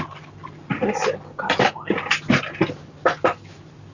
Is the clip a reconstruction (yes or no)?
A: no